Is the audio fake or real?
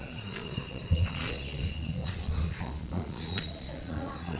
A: fake